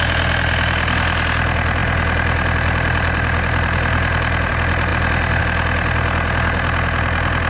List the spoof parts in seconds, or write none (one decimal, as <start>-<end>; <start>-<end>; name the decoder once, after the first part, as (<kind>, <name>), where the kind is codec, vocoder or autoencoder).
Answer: none